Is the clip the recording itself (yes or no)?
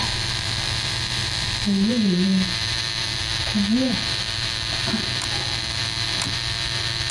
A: no